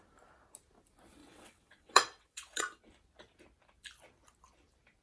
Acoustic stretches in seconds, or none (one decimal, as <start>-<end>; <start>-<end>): 0.0-1.2; 2.6-5.0